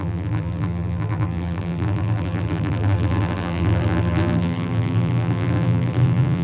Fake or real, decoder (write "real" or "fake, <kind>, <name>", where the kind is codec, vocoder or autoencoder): fake, vocoder, BigVGAN v2